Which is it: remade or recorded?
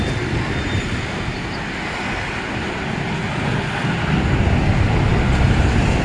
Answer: recorded